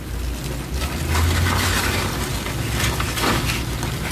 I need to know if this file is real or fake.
real